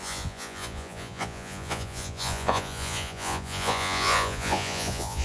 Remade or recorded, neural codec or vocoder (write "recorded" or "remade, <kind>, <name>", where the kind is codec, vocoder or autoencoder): remade, vocoder, Vocos